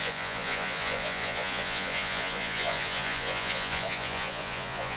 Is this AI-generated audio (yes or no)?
yes